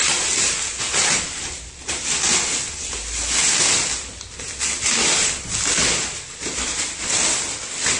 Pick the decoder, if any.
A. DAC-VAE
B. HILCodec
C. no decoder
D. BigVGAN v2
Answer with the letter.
C